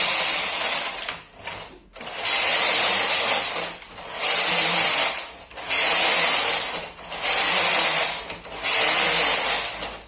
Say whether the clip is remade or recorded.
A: recorded